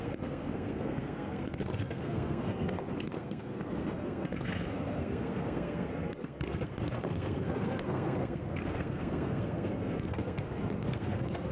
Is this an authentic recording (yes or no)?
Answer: no